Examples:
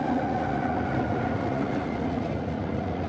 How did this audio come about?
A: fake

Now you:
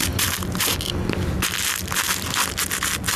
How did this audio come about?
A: real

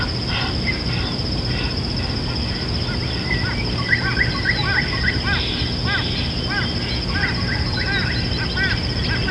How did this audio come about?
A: real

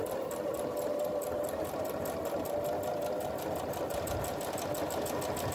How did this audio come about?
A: real